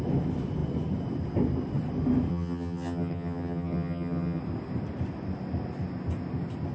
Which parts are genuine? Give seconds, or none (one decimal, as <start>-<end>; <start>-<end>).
0.0-2.3; 4.4-6.7